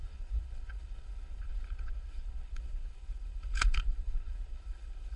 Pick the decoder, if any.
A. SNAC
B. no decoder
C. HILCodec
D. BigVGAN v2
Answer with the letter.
C